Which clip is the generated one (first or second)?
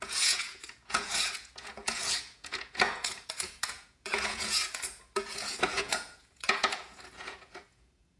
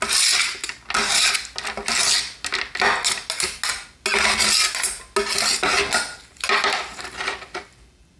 first